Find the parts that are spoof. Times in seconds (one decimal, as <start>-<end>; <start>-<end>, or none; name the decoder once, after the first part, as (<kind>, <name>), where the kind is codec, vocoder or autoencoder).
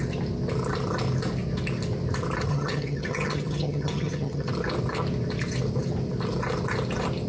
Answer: 2.5-4.5 (vocoder, HiFi-GAN)